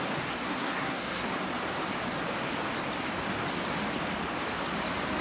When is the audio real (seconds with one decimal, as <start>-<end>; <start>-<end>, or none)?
0.0-0.4; 1.3-5.2

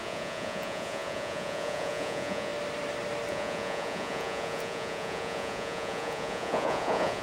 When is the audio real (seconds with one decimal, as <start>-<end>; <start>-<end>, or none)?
2.5-3.3

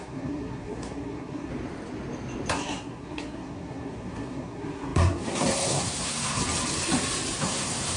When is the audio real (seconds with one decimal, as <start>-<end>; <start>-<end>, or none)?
1.5-2.5; 6.4-7.4

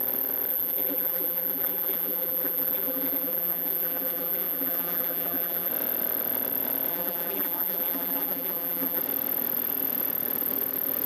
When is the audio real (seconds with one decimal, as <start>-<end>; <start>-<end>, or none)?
0.0-0.5; 5.7-6.9; 9.0-11.1